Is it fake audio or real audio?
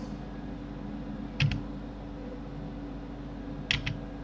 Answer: real